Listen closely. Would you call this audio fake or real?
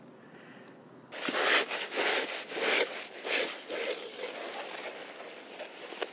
real